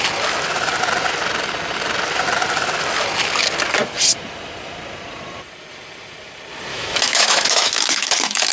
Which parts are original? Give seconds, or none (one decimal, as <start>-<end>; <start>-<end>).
0.0-6.7